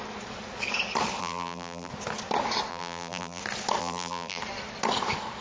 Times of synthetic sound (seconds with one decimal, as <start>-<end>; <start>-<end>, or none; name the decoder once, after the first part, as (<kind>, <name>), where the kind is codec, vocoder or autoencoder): 1.2-1.9 (vocoder, BigVGAN v2); 2.7-3.4; 3.8-4.4